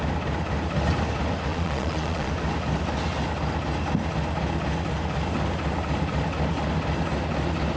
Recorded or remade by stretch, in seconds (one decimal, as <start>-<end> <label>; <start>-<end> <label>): 0.0-1.5 recorded; 1.5-2.3 remade; 2.3-7.8 recorded